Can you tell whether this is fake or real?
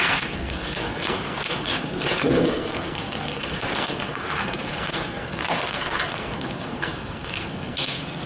fake